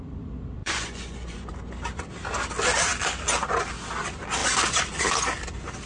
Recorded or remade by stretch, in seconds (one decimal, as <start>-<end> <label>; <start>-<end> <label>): 0.0-0.6 recorded; 0.6-1.5 remade; 1.5-5.9 recorded